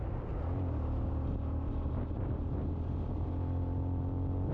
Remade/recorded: recorded